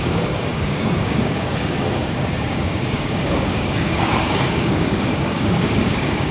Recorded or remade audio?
remade